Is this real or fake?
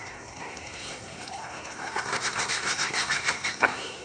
fake